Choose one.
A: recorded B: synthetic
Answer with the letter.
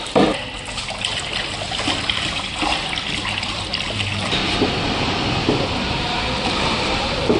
B